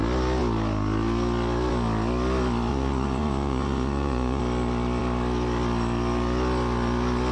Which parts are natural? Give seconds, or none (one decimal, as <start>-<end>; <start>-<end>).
0.0-2.7; 4.4-7.3